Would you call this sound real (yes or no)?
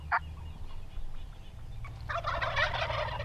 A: yes